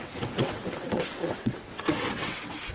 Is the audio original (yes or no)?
no